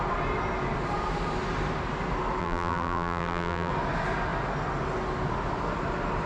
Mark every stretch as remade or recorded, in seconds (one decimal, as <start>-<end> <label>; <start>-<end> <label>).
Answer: 0.0-2.4 recorded; 2.4-3.7 remade; 3.7-6.3 recorded